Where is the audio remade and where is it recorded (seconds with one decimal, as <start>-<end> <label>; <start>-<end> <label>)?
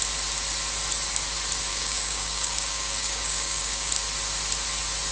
0.0-1.7 recorded; 1.7-3.9 remade; 3.9-5.1 recorded